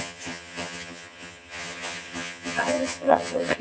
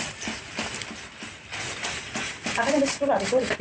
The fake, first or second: first